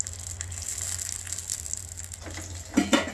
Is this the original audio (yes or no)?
yes